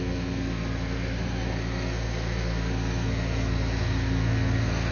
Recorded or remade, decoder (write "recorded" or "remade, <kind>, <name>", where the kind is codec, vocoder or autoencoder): remade, codec, SNAC